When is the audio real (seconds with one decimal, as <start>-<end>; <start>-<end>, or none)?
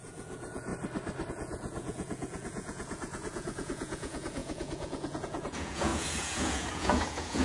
0.7-1.3